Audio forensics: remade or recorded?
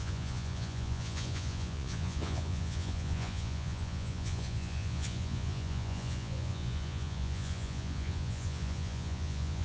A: remade